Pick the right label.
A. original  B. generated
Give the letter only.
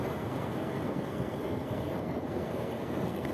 B